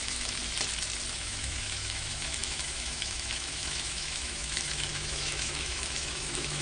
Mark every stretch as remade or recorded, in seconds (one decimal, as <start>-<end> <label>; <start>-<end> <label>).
0.0-0.4 remade; 0.4-1.1 recorded; 1.1-6.6 remade